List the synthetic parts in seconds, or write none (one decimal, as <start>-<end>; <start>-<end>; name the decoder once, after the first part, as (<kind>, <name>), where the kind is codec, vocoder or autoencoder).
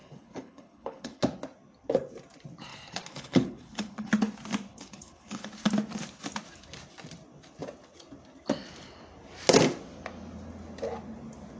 0.0-1.2 (codec, HILCodec); 2.7-4.1; 4.7-5.5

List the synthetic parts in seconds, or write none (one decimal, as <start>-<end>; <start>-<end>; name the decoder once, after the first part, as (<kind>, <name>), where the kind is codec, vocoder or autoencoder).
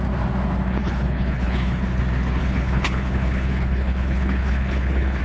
0.8-2.0 (codec, HILCodec); 2.4-5.2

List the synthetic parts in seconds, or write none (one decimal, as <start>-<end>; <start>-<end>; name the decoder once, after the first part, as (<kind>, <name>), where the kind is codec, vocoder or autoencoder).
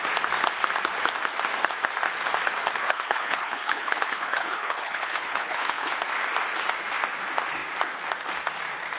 2.8-5.9 (codec, HILCodec)